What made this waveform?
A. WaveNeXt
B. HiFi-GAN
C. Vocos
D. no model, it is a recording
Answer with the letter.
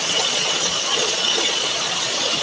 C